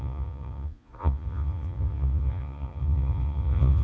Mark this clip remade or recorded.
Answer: remade